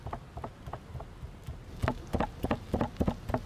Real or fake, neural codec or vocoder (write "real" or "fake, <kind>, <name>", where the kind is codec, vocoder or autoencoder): real